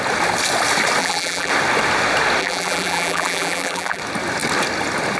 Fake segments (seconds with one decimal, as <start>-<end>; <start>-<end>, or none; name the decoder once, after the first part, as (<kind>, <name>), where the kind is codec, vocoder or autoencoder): 1.0-1.5 (vocoder, BigVGAN v2); 2.4-4.0